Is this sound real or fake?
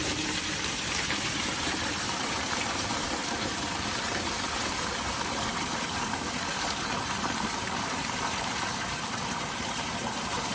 fake